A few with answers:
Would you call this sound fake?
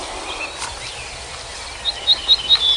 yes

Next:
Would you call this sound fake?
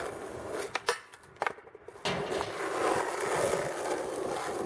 no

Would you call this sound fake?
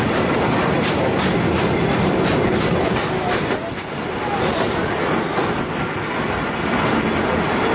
no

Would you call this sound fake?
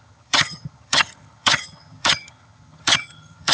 yes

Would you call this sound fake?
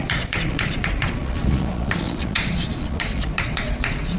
yes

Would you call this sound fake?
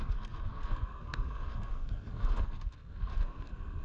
yes